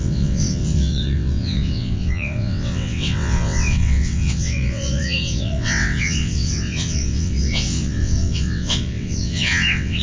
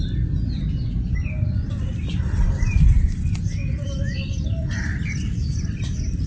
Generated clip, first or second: first